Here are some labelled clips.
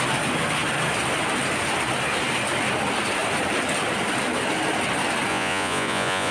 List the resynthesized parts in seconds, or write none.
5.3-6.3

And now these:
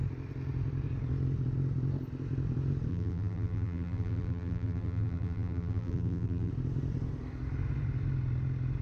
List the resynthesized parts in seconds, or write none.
2.9-6.5